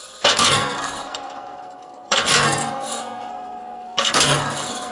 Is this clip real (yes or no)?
no